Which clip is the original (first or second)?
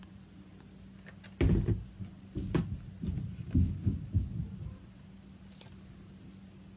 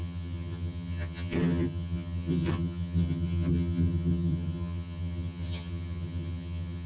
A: first